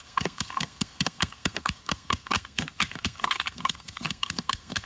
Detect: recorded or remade remade